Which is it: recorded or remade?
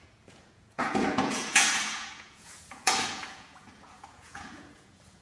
remade